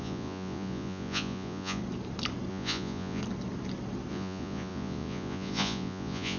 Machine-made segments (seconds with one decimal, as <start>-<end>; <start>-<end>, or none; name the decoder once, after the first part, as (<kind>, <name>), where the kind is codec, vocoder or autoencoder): 0.0-1.8 (vocoder, Vocos); 2.5-3.2; 4.1-6.4